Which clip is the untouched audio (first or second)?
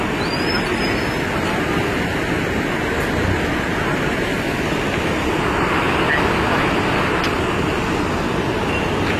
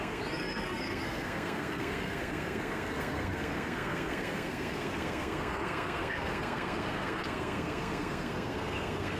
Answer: first